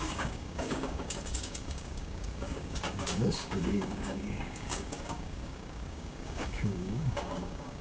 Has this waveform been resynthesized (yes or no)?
yes